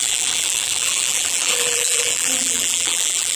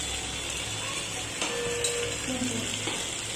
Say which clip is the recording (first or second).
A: second